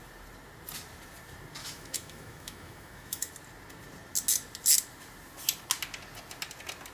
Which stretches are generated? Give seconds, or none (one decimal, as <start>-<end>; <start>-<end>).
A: 1.6-3.3